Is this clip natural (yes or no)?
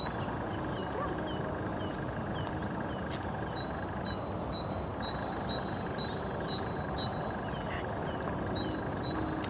yes